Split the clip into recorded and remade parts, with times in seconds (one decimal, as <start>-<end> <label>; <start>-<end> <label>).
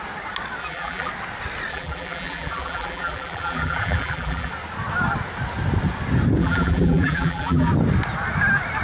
0.0-0.6 recorded; 0.6-1.1 remade; 1.1-1.7 recorded; 1.7-4.5 remade; 4.5-6.4 recorded; 6.4-7.7 remade; 7.7-8.8 recorded